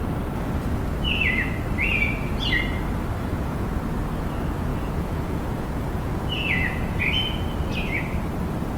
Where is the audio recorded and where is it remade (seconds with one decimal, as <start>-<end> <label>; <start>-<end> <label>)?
0.0-3.2 recorded; 3.2-3.7 remade; 3.7-4.7 recorded; 4.7-7.0 remade; 7.0-8.8 recorded